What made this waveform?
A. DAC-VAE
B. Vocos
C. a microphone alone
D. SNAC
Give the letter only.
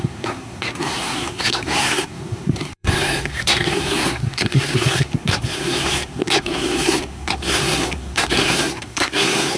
D